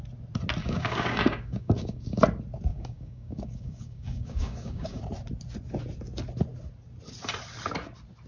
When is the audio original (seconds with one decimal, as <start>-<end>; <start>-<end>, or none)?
0.0-0.6; 2.2-2.7; 5.0-8.3